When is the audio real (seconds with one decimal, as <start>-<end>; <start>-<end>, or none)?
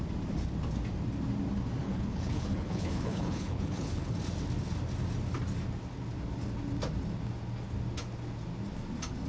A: 0.0-1.8; 4.1-9.3